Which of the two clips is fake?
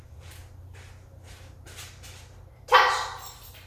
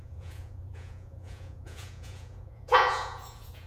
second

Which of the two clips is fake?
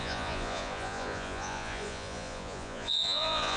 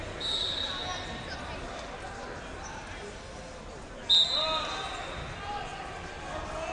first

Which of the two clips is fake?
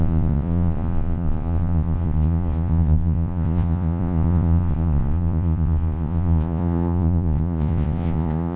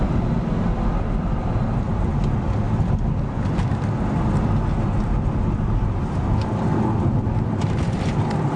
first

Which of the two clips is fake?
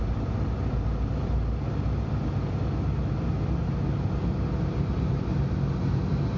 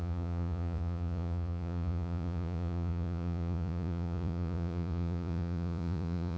second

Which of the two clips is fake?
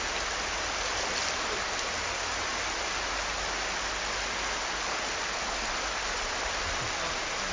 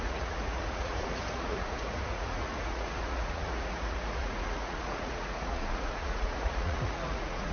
second